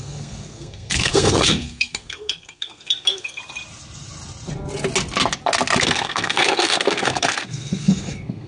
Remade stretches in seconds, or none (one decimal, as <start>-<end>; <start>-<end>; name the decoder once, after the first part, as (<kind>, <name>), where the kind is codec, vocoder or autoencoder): 0.0-3.4 (codec, SNAC); 5.8-8.5